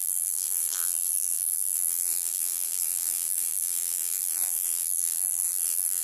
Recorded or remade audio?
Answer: remade